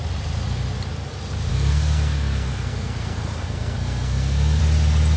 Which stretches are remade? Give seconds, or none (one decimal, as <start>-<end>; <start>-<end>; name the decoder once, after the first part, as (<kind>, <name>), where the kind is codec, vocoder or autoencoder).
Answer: 1.5-4.6 (codec, SNAC)